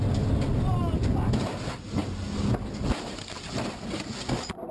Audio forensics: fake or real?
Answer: real